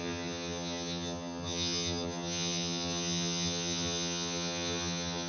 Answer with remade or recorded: remade